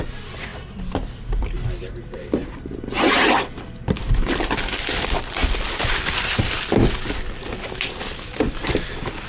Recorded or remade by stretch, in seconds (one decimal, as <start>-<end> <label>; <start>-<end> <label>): 0.0-0.5 remade; 0.5-1.2 recorded; 1.2-2.4 remade; 2.4-4.0 recorded; 4.0-9.3 remade